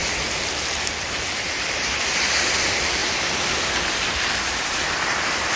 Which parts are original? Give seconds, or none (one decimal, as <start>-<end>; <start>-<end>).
0.0-1.0; 3.0-4.6